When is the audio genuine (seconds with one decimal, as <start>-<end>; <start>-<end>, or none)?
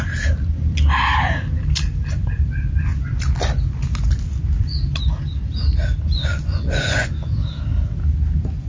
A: 0.0-6.3; 7.1-8.7